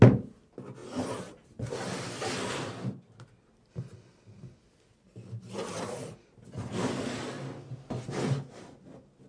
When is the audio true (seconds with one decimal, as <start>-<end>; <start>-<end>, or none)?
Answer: 0.0-9.3